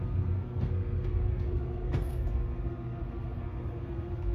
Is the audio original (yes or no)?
no